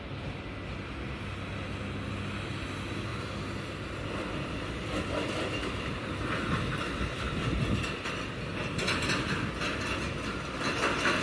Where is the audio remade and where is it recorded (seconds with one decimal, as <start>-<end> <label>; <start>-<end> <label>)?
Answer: 0.0-11.2 recorded